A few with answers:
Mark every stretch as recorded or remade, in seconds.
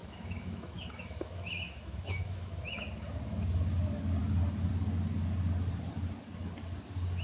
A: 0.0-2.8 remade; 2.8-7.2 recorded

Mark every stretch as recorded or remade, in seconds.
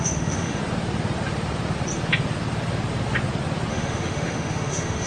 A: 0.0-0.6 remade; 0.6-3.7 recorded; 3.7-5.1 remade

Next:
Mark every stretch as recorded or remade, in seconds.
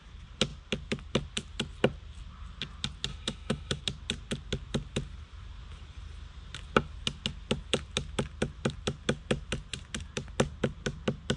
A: 0.0-3.1 recorded; 3.1-3.8 remade; 3.8-11.4 recorded